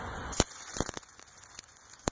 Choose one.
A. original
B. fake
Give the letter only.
B